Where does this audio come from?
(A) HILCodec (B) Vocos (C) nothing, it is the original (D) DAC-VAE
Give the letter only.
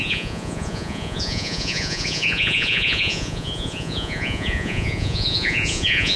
B